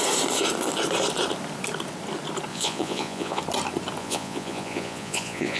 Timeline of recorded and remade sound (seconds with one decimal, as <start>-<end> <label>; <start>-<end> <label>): 0.0-2.5 recorded; 2.5-3.4 remade; 3.4-4.0 recorded; 4.0-5.6 remade